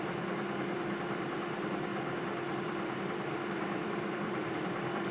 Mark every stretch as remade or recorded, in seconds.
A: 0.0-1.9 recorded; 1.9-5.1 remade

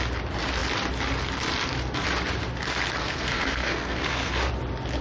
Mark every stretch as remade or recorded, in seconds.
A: 0.0-3.0 recorded; 3.0-4.5 remade; 4.5-5.0 recorded

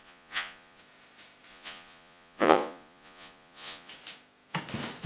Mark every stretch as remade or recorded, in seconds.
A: 0.0-0.8 remade; 0.8-1.5 recorded; 1.5-3.9 remade; 3.9-5.1 recorded